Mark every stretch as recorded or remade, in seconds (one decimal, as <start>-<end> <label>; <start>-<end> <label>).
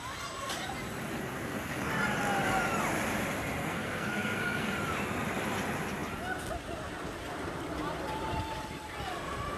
0.0-1.3 recorded; 1.3-1.9 remade; 1.9-3.6 recorded; 3.6-4.7 remade; 4.7-9.6 recorded